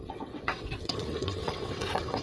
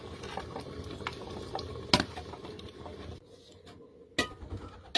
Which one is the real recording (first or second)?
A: second